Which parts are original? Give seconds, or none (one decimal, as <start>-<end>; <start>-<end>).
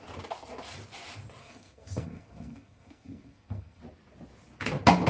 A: 0.0-1.4; 3.8-5.1